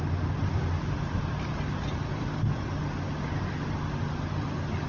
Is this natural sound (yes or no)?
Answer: yes